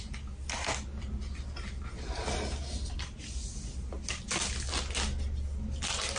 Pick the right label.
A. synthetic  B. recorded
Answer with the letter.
B